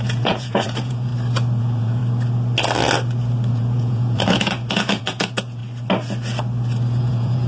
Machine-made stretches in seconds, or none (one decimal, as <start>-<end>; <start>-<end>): 0.0-1.1; 1.6-2.0; 3.5-5.6; 7.0-7.5